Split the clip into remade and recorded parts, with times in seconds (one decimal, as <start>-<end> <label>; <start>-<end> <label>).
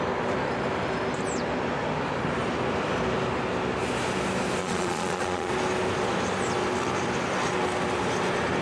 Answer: 0.0-4.6 recorded; 4.6-5.5 remade; 5.5-8.6 recorded